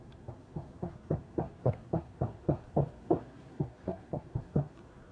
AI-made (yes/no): yes